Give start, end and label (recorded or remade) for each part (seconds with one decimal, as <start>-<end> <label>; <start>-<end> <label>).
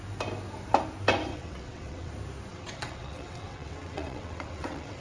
0.0-1.3 recorded; 1.3-2.1 remade; 2.1-2.5 recorded; 2.5-5.0 remade